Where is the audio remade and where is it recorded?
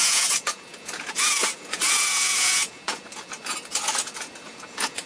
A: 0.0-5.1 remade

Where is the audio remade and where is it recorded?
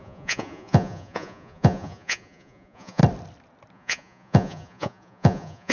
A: 0.0-3.0 remade; 3.0-3.7 recorded; 3.7-5.7 remade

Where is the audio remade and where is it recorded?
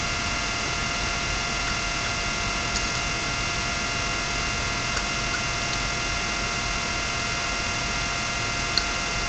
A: 0.0-9.3 recorded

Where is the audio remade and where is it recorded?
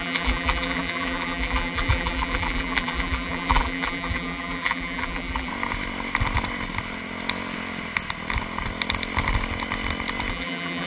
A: 0.0-5.5 remade; 5.5-10.3 recorded; 10.3-10.9 remade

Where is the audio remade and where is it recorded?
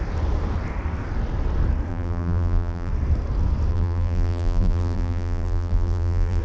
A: 0.0-1.9 recorded; 1.9-2.9 remade; 2.9-3.7 recorded; 3.7-6.4 remade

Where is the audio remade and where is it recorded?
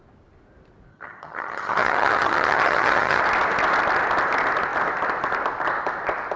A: 0.0-0.9 recorded; 0.9-3.2 remade; 3.2-6.4 recorded